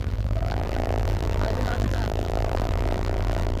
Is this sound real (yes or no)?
no